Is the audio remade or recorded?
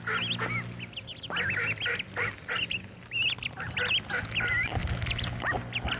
recorded